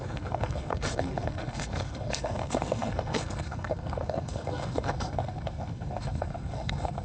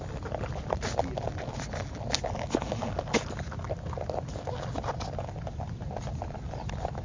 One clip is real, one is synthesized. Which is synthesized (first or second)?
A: first